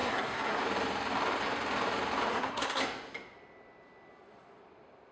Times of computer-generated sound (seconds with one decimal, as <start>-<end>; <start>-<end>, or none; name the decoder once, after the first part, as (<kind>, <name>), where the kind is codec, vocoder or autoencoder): 0.0-0.6 (codec, SNAC); 2.3-2.8